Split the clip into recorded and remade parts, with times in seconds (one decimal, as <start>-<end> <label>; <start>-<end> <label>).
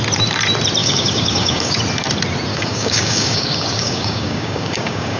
0.0-0.8 recorded; 0.8-1.8 remade; 1.8-2.5 recorded; 2.5-5.2 remade